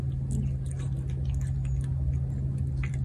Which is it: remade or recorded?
recorded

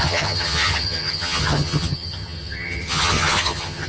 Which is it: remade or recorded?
remade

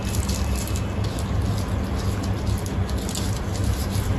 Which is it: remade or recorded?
recorded